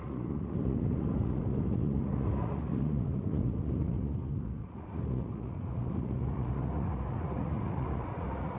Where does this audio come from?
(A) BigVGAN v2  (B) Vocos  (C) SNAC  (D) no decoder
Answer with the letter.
B